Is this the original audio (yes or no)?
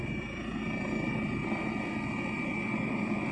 no